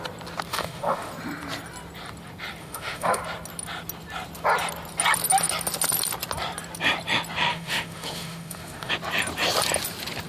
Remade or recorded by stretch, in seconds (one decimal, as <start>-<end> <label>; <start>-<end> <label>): 0.0-0.5 recorded; 0.5-1.1 remade; 1.1-2.6 recorded; 2.6-3.2 remade; 3.2-7.5 recorded; 7.5-8.9 remade; 8.9-10.3 recorded